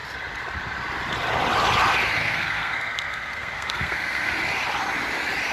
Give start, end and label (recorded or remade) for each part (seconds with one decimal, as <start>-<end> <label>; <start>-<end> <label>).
0.0-2.2 recorded; 2.2-4.3 remade; 4.3-5.5 recorded